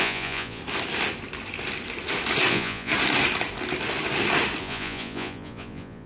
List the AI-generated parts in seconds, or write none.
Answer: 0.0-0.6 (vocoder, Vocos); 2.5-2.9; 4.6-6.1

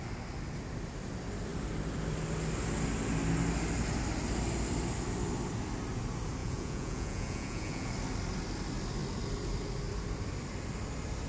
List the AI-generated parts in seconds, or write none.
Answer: 6.4-7.9 (vocoder, Vocos)

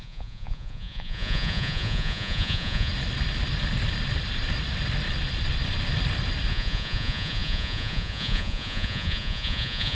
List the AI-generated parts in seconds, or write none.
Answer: 0.0-2.9 (vocoder, Vocos); 6.5-9.9

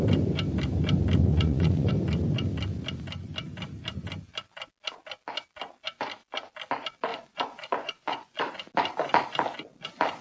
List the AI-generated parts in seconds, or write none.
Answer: 1.3-1.9 (vocoder, Vocos); 7.1-8.4

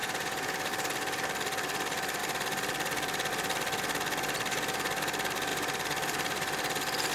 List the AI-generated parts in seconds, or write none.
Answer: 0.0-0.7 (vocoder, Vocos)

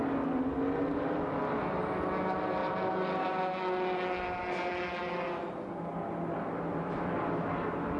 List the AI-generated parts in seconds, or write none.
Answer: none

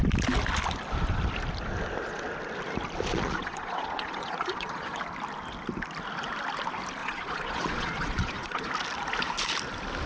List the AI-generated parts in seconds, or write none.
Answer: 3.1-5.0 (vocoder, Vocos); 7.0-8.7

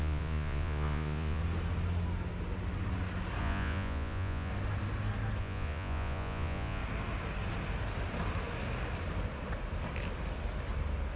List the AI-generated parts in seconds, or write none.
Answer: 0.0-1.4 (vocoder, Vocos); 3.4-4.5; 5.4-6.8